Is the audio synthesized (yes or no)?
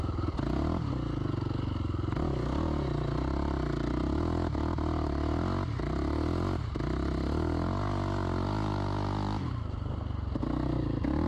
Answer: no